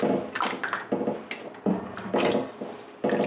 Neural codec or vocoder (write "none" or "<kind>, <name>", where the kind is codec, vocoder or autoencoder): none